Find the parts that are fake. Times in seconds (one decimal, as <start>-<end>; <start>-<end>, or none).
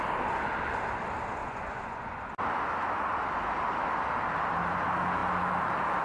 1.4-2.3